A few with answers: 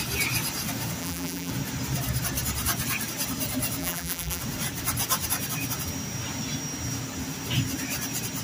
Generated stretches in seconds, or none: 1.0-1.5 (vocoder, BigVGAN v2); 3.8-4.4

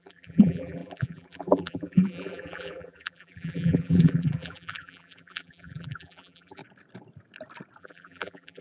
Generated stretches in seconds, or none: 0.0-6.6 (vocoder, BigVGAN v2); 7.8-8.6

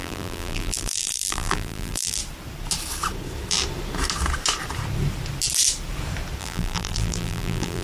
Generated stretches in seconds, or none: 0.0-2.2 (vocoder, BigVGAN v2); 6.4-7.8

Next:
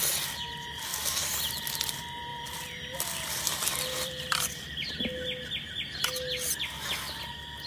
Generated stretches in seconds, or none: 0.9-1.9 (vocoder, BigVGAN v2); 2.3-4.9